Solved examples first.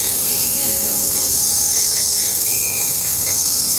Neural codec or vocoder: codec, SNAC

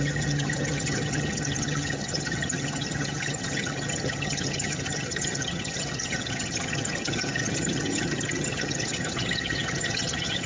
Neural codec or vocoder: vocoder, HiFi-GAN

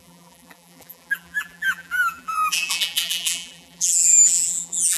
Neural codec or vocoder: vocoder, BigVGAN v2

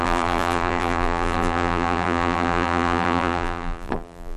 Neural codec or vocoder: vocoder, BigVGAN v2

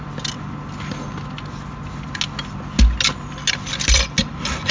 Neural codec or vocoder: none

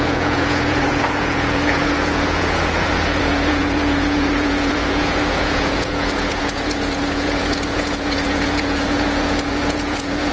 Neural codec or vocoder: vocoder, Vocos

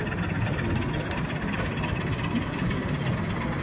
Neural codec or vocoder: none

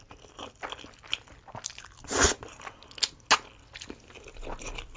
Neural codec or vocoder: none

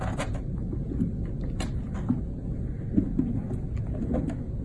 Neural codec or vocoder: none